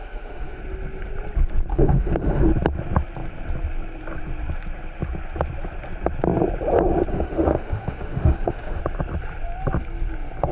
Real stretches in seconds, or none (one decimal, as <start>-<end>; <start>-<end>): 0.6-1.7; 2.4-7.1; 8.8-10.5